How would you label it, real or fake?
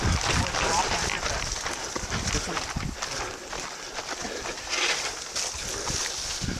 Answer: real